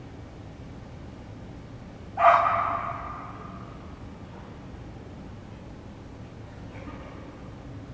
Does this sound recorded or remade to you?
recorded